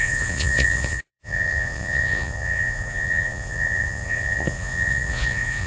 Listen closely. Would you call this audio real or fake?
fake